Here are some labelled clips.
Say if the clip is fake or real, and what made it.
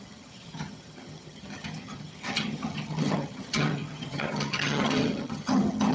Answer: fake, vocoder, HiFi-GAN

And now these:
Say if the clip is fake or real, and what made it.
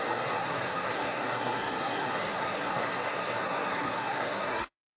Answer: fake, codec, SNAC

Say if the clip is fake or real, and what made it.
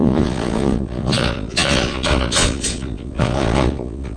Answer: fake, vocoder, Vocos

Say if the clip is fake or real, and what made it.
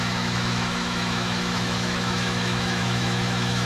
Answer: fake, autoencoder, DAC-VAE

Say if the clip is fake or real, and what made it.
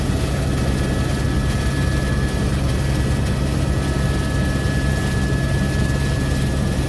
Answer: real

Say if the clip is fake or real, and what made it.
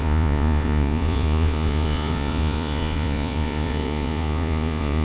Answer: fake, vocoder, Vocos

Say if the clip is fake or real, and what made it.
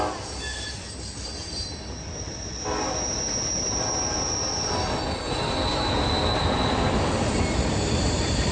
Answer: real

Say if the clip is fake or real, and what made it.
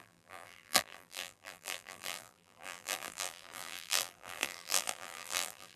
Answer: fake, vocoder, BigVGAN v2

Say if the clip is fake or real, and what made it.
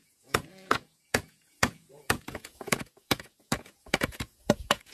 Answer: fake, vocoder, Vocos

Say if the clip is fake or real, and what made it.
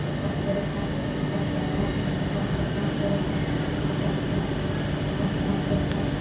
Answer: real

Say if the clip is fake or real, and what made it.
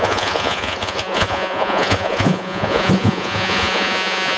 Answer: fake, vocoder, Vocos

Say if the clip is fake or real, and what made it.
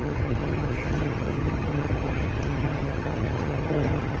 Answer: fake, vocoder, HiFi-GAN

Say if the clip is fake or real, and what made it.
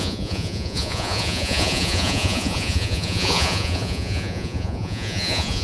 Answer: fake, vocoder, Vocos